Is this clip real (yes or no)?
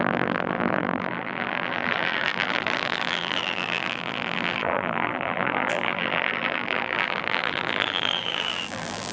no